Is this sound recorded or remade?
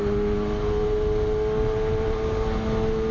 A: recorded